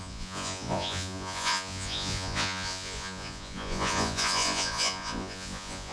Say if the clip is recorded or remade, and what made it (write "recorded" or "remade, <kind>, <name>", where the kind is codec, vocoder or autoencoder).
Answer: remade, vocoder, Vocos